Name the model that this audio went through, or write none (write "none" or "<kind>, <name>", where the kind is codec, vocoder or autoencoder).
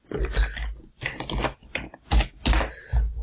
none